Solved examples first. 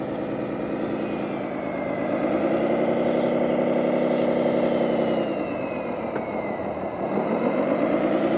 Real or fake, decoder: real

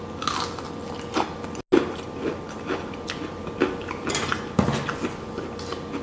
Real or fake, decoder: real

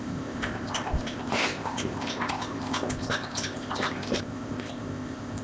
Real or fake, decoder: fake, codec, ZipCodec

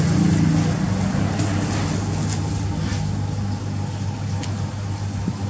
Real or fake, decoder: real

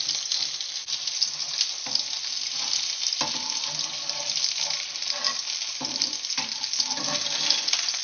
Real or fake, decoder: real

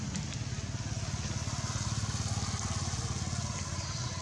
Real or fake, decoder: real